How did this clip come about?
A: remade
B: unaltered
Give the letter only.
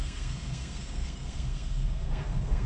A